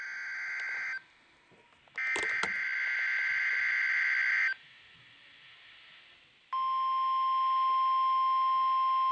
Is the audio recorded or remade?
recorded